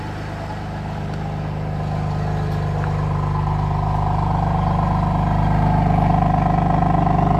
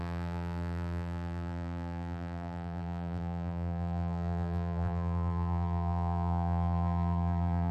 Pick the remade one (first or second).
second